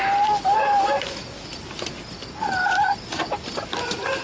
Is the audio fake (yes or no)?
no